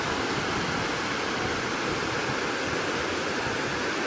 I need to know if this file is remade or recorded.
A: recorded